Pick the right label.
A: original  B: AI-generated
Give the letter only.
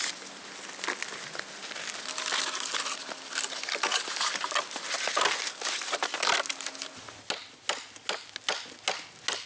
A